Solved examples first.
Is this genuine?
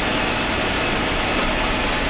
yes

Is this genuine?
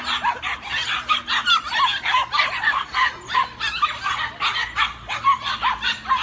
yes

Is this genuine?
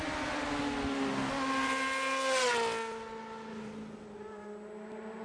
yes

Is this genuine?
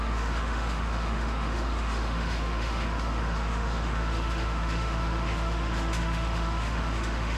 no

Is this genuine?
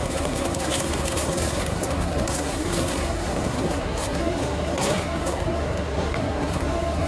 no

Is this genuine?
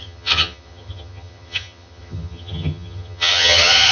no